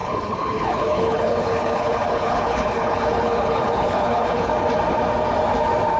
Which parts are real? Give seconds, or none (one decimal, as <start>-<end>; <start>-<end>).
4.5-6.0